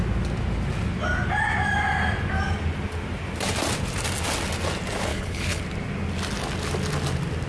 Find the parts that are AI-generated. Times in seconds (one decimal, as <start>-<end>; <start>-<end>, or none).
5.1-5.6